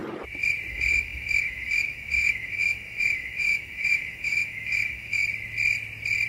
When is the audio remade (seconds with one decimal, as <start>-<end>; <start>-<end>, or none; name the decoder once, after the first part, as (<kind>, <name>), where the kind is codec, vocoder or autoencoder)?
0.7-5.2 (autoencoder, DAC-VAE)